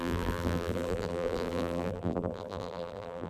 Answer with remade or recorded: remade